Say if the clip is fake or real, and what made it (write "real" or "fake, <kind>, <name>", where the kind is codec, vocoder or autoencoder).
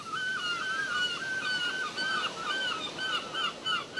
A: real